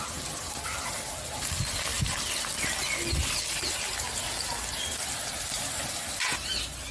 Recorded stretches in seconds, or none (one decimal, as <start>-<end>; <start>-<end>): 0.0-6.9